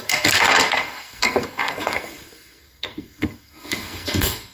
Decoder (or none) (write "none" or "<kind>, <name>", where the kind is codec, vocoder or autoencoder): codec, SNAC